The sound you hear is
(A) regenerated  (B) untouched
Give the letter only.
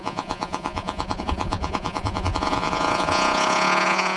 A